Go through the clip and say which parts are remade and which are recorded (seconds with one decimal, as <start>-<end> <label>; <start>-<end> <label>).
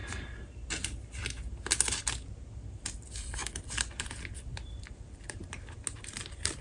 0.0-2.7 recorded; 2.7-5.4 remade; 5.4-6.1 recorded; 6.1-6.6 remade